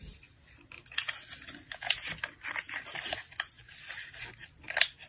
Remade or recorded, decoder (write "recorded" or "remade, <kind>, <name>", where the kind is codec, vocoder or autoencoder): recorded